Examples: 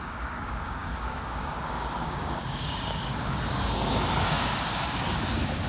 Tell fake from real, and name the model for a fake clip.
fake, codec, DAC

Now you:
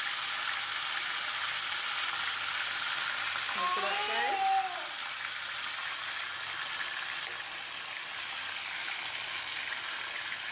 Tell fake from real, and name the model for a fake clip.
real